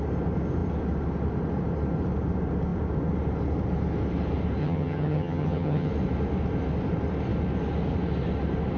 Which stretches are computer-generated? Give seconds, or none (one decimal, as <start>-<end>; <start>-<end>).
4.6-5.9